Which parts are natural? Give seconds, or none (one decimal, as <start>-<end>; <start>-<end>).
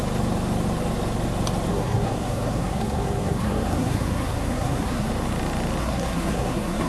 0.0-1.7; 5.1-5.8